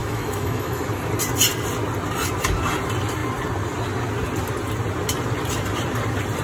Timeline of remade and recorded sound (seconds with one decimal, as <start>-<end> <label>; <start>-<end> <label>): 0.0-0.8 remade; 0.8-6.4 recorded